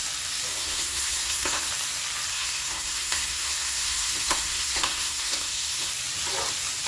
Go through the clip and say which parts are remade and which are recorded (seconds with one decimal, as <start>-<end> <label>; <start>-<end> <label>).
0.0-0.5 recorded; 0.5-1.7 remade; 1.7-2.3 recorded; 2.3-5.9 remade; 5.9-6.9 recorded